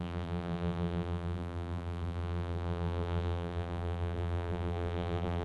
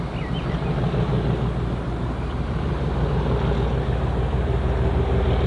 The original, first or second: second